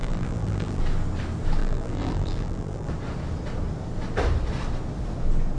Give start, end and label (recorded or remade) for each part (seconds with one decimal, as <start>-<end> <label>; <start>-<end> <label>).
0.0-0.8 remade; 0.8-1.6 recorded; 1.6-2.9 remade; 2.9-5.6 recorded